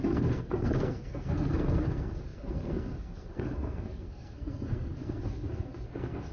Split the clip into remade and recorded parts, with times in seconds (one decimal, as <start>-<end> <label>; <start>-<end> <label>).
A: 0.0-6.3 remade